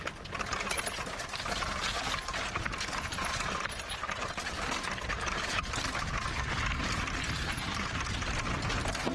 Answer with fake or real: real